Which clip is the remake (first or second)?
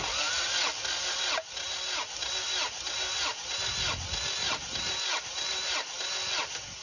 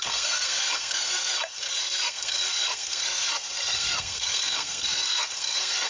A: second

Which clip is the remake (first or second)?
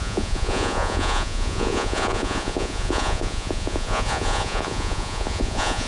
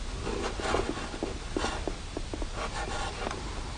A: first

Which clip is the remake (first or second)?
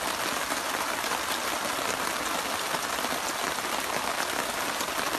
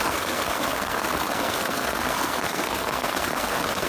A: second